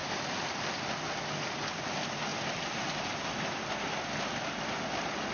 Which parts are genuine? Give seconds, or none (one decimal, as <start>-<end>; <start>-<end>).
0.0-5.3